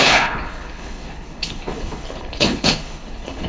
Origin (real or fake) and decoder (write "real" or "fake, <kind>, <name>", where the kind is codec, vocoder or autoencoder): fake, codec, HILCodec